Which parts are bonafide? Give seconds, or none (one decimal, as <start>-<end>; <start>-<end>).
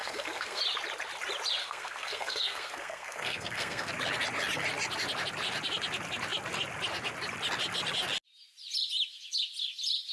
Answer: 0.6-1.6; 3.9-10.1